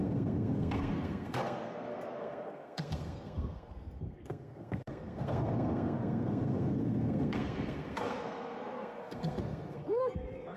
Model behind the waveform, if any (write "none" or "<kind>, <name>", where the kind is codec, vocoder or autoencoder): codec, SNAC